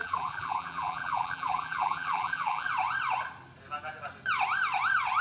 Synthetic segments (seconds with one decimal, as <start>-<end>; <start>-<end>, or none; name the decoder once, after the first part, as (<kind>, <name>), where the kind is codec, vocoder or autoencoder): 0.0-2.7 (vocoder, BigVGAN v2)